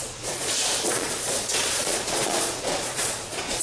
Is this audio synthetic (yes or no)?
yes